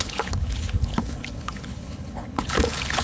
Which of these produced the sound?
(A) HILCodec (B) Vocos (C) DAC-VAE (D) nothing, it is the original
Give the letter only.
A